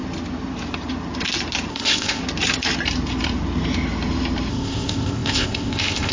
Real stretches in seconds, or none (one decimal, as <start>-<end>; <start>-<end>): 0.0-1.7; 2.2-4.5